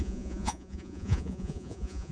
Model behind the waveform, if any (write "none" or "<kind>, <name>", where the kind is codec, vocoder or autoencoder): vocoder, Vocos